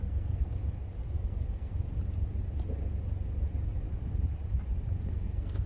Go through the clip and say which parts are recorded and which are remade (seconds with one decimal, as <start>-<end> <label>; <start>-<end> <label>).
0.0-0.6 remade; 0.6-1.1 recorded; 1.1-1.7 remade; 1.7-5.1 recorded; 5.1-5.7 remade